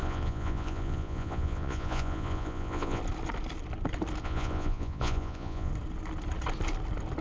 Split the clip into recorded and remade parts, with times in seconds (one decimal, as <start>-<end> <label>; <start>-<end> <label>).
0.0-3.0 remade; 3.0-4.2 recorded; 4.2-5.7 remade; 5.7-7.2 recorded